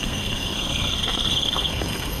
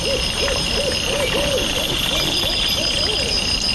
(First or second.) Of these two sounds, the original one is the second